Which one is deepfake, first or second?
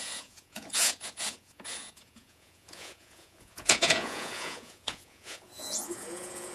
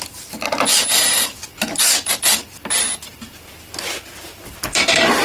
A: first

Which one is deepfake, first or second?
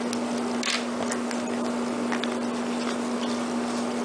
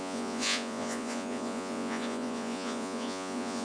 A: second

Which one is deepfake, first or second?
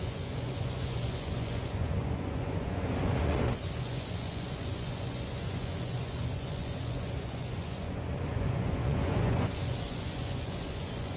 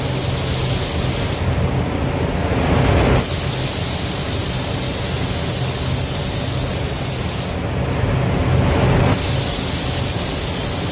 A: first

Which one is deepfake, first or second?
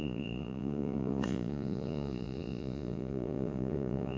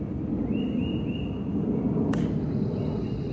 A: first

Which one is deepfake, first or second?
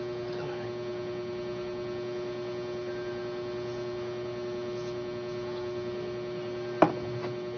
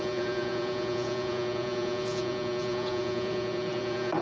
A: second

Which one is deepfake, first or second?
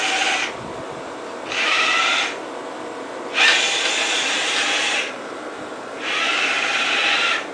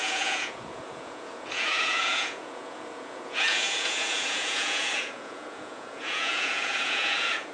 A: second